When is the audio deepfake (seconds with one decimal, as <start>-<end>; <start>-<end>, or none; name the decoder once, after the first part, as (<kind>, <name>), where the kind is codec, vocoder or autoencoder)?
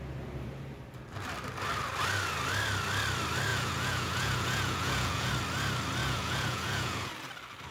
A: 3.5-5.3 (vocoder, Vocos); 6.0-7.1